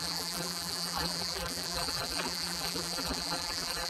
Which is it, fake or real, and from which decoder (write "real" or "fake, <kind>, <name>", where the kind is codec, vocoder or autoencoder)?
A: fake, vocoder, BigVGAN v2